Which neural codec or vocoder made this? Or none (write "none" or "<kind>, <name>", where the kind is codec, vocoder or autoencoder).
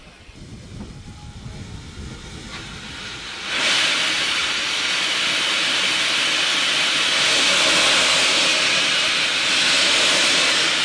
none